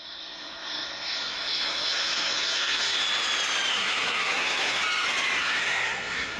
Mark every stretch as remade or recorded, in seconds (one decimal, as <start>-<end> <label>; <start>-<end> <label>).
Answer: 0.0-3.0 remade; 3.0-3.7 recorded; 3.7-4.8 remade; 4.8-5.4 recorded; 5.4-6.4 remade